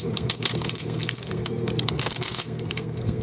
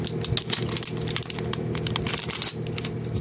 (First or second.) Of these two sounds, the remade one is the first